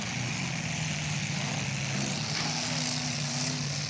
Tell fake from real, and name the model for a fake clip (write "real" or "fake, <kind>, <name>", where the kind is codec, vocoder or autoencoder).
real